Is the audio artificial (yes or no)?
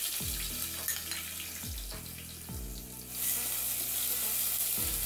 no